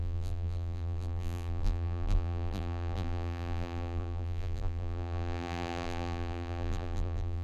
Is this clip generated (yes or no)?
yes